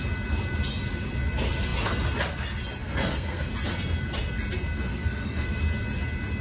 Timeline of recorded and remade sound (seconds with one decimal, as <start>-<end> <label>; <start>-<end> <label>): 0.0-2.8 recorded; 2.8-3.5 remade; 3.5-4.9 recorded; 4.9-5.6 remade; 5.6-6.4 recorded